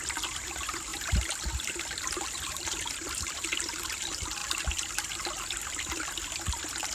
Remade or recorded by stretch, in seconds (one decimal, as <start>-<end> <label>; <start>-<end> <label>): 0.0-6.9 recorded